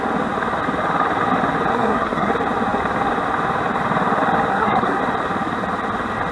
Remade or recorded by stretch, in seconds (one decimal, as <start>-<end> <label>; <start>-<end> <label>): 0.0-1.7 recorded; 1.7-2.3 remade; 2.3-4.5 recorded; 4.5-5.0 remade; 5.0-6.3 recorded